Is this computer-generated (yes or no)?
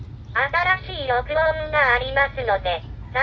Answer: no